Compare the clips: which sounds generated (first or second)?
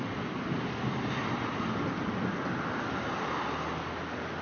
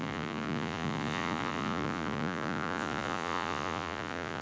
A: second